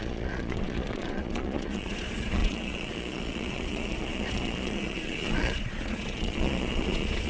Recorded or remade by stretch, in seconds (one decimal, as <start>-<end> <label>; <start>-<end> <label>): 0.0-7.3 remade